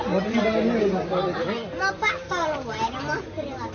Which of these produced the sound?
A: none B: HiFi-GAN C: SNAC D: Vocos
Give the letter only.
A